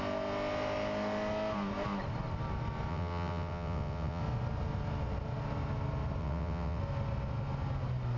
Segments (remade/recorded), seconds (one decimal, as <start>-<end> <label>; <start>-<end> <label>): 0.0-2.9 recorded; 2.9-4.2 remade; 4.2-6.2 recorded; 6.2-6.8 remade; 6.8-8.2 recorded